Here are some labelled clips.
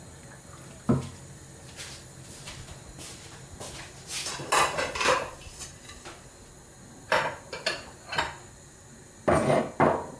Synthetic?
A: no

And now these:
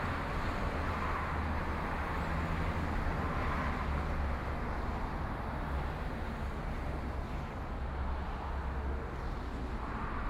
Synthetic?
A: no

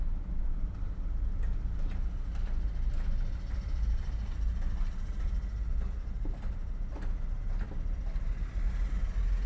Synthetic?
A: no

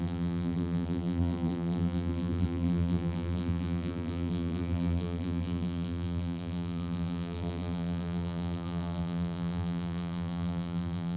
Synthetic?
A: yes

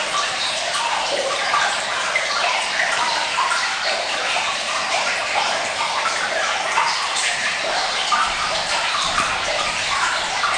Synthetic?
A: yes